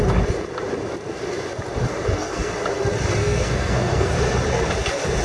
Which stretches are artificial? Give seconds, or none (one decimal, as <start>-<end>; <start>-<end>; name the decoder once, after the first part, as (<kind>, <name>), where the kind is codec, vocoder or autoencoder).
1.9-2.5 (codec, SNAC); 3.2-4.1